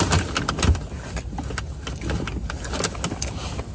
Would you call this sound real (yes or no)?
yes